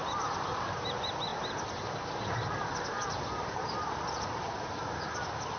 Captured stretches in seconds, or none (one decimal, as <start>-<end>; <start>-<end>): 0.0-5.6